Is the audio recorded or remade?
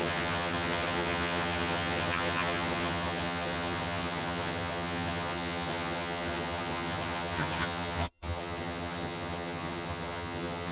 remade